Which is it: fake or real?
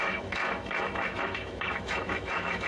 fake